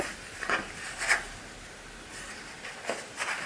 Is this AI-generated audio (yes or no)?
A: no